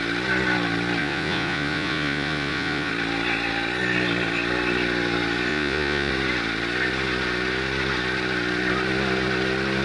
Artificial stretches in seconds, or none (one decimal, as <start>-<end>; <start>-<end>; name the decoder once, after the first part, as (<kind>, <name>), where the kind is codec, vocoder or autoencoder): 1.0-2.9 (vocoder, Vocos); 5.5-6.1